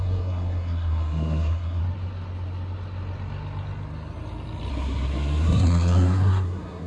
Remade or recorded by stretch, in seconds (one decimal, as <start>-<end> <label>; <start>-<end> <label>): 0.0-1.8 remade; 1.8-4.7 recorded; 4.7-6.9 remade